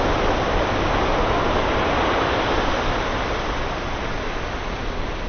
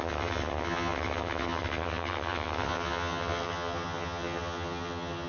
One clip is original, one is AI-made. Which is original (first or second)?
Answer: first